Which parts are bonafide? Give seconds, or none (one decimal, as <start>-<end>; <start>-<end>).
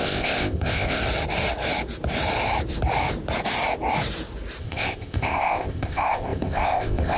1.0-4.6